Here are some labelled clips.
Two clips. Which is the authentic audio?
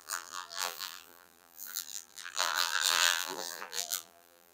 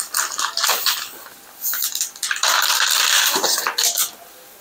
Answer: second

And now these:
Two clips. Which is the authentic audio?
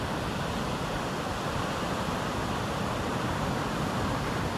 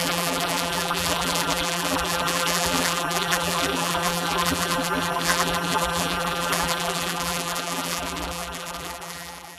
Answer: first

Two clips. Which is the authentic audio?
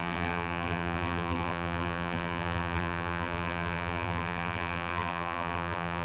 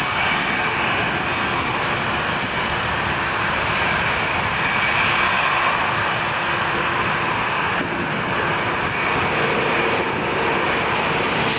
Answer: second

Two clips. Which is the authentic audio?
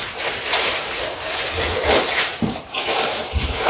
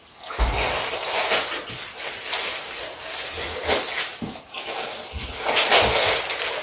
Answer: second